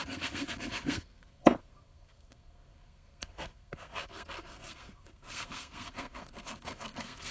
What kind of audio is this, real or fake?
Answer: fake